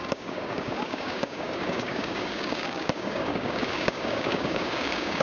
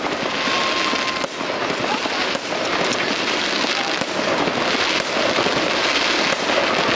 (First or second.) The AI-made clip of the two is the first